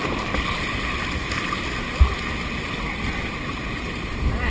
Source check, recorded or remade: recorded